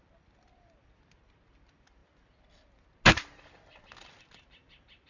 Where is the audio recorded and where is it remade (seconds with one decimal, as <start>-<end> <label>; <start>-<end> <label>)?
0.0-5.1 recorded